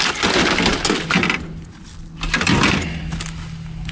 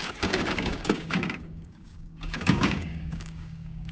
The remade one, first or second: second